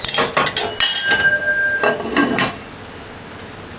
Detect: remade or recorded recorded